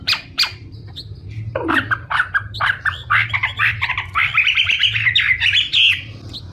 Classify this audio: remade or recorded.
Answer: recorded